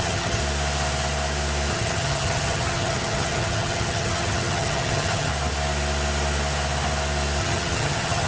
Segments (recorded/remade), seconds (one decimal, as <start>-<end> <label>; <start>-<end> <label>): 0.0-0.4 remade; 0.4-1.7 recorded; 1.7-5.3 remade; 5.3-7.4 recorded; 7.4-8.3 remade